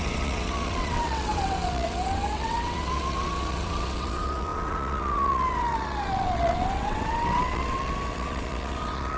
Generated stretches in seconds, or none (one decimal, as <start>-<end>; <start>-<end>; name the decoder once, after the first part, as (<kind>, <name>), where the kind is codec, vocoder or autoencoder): 0.0-9.2 (vocoder, WaveNeXt)